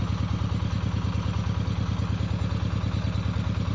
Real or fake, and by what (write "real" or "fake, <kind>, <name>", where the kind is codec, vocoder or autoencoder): real